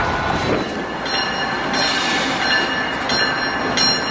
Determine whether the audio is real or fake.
real